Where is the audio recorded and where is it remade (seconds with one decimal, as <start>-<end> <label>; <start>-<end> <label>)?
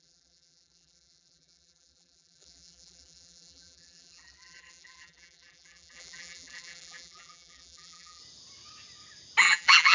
0.0-8.2 remade; 8.2-9.4 recorded; 9.4-9.9 remade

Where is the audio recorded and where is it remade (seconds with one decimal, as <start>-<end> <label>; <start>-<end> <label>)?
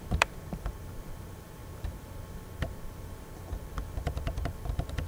0.0-5.1 remade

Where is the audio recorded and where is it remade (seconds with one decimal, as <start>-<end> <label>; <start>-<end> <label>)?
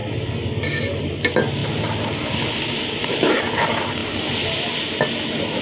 0.0-4.0 recorded; 4.0-4.6 remade; 4.6-5.6 recorded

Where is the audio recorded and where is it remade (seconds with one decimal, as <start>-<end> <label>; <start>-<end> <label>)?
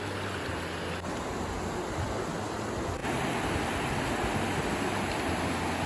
0.0-3.0 recorded; 3.0-3.9 remade; 3.9-5.9 recorded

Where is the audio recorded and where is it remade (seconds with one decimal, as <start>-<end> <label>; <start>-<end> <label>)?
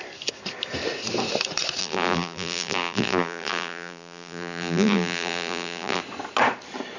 0.0-1.8 recorded; 1.8-6.0 remade; 6.0-7.0 recorded